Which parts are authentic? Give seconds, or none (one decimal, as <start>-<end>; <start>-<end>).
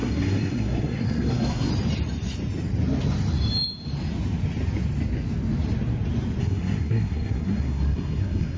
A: 1.7-6.4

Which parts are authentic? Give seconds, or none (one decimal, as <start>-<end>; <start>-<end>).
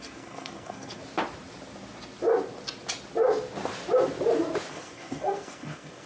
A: 1.0-4.7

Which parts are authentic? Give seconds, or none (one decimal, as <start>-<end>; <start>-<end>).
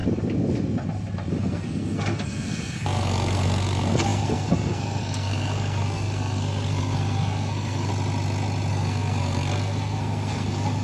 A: 0.0-1.3; 7.9-8.7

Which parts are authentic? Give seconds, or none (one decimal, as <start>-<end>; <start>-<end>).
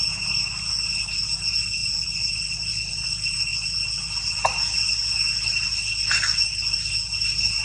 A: 0.0-7.6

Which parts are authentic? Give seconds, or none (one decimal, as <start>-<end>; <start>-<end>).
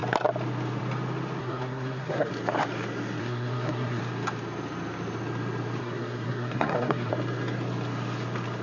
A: 0.0-1.4; 2.3-3.2; 4.0-5.8; 7.1-8.6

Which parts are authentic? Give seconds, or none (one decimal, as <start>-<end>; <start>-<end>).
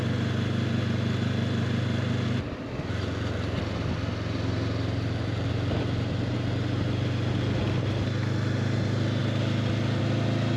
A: 0.0-10.6